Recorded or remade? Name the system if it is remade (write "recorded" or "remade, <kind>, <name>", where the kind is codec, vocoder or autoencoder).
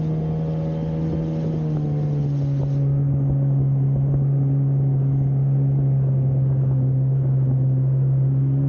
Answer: recorded